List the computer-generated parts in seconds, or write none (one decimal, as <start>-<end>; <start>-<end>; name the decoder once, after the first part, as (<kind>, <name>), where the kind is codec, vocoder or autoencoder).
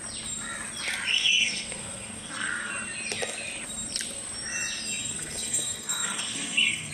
1.1-2.7 (codec, SNAC); 5.0-6.9